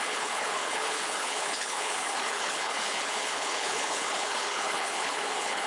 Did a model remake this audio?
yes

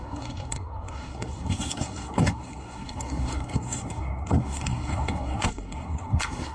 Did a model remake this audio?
yes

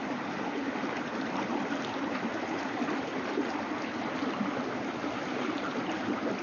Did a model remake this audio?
no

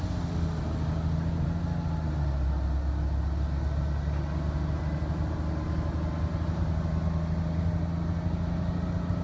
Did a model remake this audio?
no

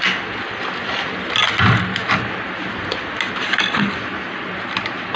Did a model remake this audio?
no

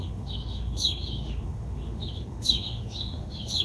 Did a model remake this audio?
yes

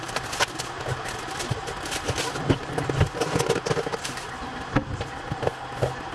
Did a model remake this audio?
no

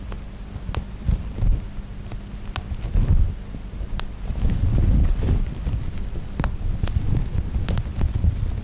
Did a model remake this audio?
no